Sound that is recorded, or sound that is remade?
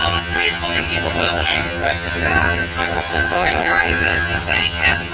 remade